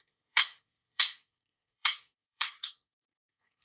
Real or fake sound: fake